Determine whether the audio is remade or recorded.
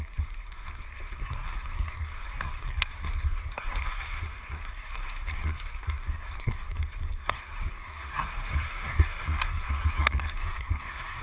remade